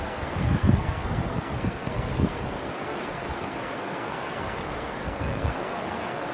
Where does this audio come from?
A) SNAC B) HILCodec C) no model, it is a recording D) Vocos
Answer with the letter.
A